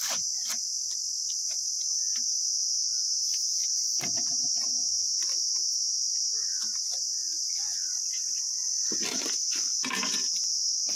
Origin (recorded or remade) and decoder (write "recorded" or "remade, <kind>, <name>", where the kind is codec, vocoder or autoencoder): recorded